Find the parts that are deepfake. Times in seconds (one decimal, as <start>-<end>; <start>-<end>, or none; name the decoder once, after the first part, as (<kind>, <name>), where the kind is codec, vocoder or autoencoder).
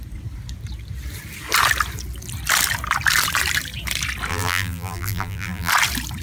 4.3-5.7 (vocoder, BigVGAN v2)